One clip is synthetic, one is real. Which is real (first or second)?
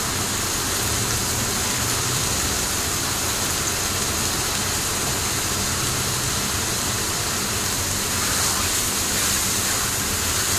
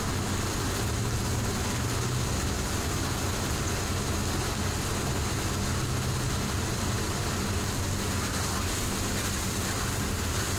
second